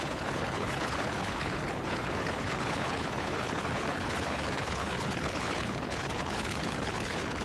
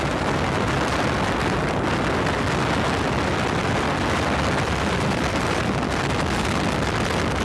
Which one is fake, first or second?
first